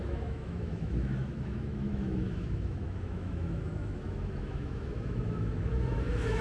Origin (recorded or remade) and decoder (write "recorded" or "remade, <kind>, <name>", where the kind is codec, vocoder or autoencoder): remade, autoencoder, DAC-VAE